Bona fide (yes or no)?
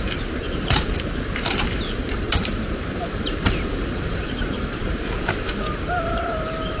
no